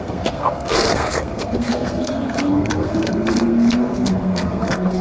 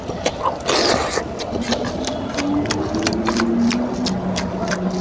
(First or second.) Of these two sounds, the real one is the second